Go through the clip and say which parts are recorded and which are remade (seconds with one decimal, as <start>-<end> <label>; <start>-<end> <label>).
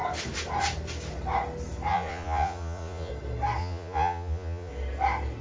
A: 0.0-1.9 recorded; 1.9-3.1 remade; 3.1-3.6 recorded; 3.6-4.7 remade; 4.7-5.4 recorded